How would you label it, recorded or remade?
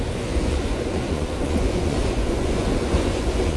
remade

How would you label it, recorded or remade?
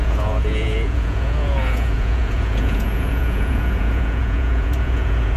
remade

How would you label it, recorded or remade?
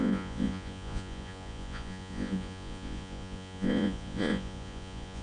remade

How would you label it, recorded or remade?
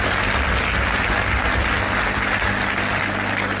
recorded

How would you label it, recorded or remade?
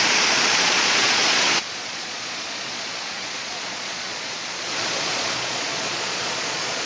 remade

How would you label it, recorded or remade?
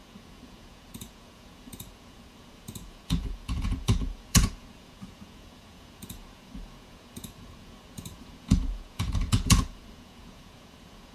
remade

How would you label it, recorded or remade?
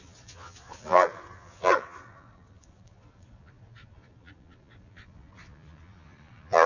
remade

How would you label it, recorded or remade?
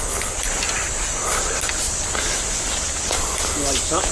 recorded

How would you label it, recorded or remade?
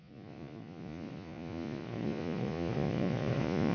remade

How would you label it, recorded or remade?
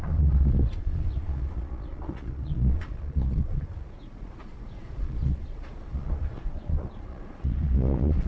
remade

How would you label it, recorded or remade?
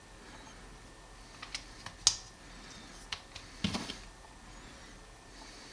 recorded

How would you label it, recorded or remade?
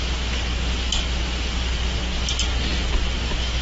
recorded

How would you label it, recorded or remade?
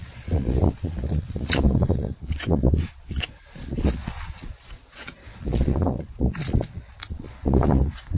remade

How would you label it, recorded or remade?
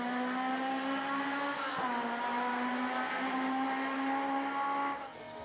recorded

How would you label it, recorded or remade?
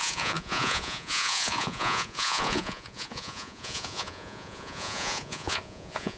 remade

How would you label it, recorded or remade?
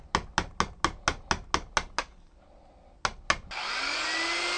recorded